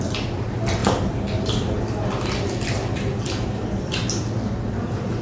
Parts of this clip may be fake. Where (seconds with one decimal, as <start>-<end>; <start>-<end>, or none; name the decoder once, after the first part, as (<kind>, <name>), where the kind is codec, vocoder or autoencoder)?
0.8-3.9 (vocoder, BigVGAN v2)